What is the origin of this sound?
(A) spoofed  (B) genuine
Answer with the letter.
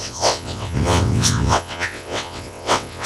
A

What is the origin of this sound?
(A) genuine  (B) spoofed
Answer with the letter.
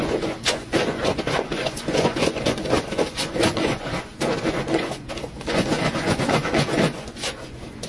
B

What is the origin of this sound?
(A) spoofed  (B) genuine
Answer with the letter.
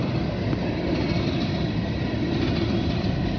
B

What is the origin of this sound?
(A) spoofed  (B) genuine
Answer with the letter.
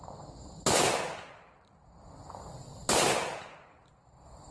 B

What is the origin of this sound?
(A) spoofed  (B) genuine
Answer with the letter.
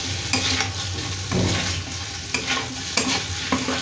B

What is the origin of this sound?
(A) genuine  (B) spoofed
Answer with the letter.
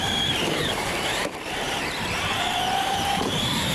B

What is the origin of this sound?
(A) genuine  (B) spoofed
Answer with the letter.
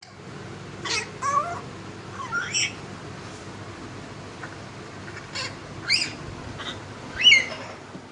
A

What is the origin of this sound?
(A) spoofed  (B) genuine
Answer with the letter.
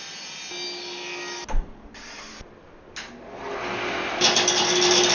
B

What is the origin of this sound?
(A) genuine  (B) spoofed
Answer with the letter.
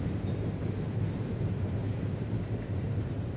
B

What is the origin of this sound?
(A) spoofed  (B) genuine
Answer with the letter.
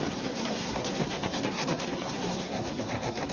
A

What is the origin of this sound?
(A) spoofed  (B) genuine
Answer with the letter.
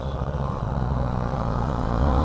A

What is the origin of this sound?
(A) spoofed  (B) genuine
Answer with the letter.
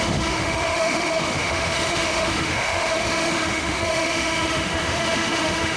A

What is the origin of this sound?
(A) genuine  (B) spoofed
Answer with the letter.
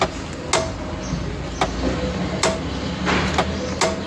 A